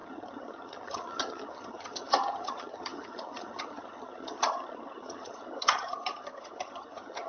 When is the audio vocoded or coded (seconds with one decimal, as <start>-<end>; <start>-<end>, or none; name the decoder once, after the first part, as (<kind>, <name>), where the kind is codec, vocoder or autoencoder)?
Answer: 0.0-7.3 (vocoder, HiFi-GAN)